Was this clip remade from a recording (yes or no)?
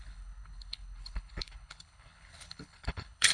yes